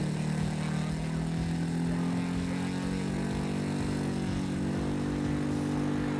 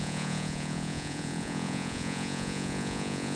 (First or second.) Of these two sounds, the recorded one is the first